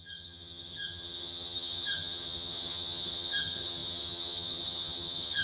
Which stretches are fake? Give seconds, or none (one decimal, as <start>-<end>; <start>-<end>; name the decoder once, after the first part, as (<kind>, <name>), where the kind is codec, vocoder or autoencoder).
0.0-5.4 (vocoder, HiFi-GAN)